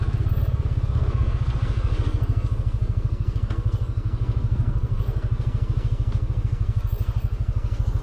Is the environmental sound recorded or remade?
remade